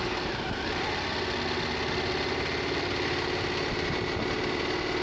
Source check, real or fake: real